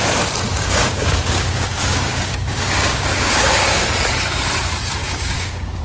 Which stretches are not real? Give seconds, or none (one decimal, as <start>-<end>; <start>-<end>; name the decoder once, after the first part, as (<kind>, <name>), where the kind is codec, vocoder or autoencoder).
0.5-3.9 (codec, DAC); 5.0-5.8